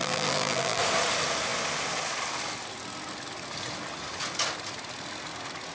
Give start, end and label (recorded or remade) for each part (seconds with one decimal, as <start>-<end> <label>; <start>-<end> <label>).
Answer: 0.0-0.8 remade; 0.8-5.7 recorded